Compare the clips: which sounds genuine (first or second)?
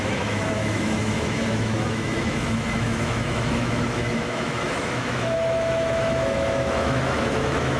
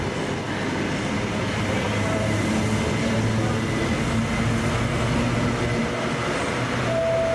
second